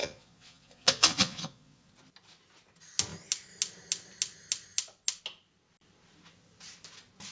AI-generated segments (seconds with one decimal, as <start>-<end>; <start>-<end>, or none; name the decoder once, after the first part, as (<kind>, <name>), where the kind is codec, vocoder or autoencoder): 0.0-1.9 (vocoder, Vocos)

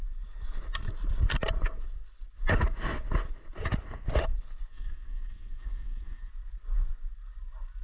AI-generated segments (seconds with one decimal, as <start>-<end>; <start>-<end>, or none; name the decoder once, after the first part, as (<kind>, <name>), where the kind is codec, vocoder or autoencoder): 4.7-6.3 (codec, SNAC)

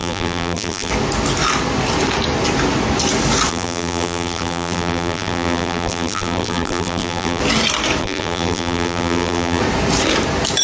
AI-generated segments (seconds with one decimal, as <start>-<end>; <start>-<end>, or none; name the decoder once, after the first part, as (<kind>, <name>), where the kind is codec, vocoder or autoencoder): 0.0-0.9 (vocoder, BigVGAN v2); 3.5-7.4; 8.0-9.6

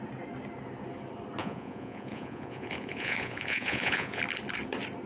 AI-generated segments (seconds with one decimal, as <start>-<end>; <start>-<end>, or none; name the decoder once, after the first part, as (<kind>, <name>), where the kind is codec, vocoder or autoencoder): 1.4-4.2 (vocoder, Vocos)

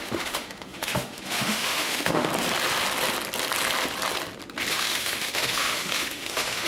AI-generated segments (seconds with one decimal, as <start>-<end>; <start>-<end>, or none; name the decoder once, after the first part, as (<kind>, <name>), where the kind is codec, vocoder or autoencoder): 0.0-2.3 (autoencoder, DAC-VAE); 4.7-6.7

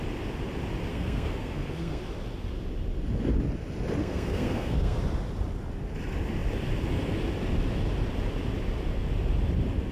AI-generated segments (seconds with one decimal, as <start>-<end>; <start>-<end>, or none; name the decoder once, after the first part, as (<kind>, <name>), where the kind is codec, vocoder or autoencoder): 0.9-2.0 (codec, SNAC); 4.0-5.0